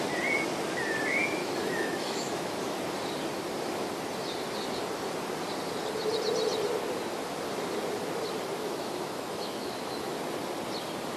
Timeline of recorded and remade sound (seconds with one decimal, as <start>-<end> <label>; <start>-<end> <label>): 0.0-1.4 recorded; 1.4-2.8 remade; 2.8-8.6 recorded; 8.6-10.2 remade; 10.2-11.2 recorded